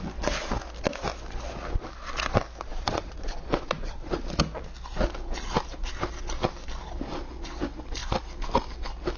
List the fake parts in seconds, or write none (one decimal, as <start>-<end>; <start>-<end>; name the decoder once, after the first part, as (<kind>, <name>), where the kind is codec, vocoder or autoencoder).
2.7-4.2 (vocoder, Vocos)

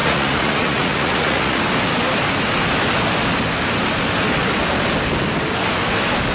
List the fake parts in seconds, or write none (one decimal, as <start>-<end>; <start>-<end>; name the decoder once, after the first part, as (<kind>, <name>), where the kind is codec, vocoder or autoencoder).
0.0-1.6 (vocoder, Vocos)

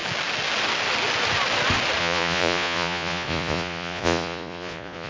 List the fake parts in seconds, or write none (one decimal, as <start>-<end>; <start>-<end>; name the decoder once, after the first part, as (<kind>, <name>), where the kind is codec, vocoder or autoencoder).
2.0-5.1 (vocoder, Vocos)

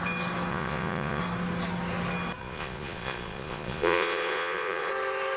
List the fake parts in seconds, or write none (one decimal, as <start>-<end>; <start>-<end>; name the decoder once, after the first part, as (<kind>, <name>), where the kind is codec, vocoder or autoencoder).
0.5-1.2 (vocoder, Vocos); 2.4-4.9

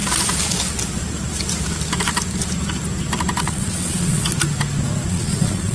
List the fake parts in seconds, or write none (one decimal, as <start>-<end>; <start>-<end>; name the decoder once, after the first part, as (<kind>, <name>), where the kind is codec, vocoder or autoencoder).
3.4-4.3 (vocoder, Vocos); 5.1-5.7

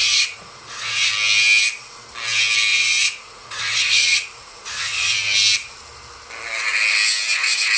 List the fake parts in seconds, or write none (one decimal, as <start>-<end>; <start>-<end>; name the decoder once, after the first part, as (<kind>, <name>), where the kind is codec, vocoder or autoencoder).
0.0-1.1 (vocoder, Vocos); 2.7-5.1

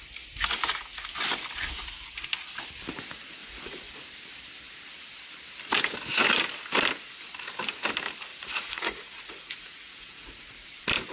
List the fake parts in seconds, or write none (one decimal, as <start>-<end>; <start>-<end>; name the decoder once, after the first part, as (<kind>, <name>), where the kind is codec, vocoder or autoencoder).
3.4-3.9 (vocoder, Vocos); 8.3-10.4